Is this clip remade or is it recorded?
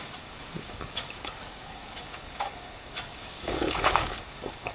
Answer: remade